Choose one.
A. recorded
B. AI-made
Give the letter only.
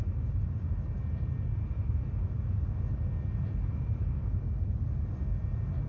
A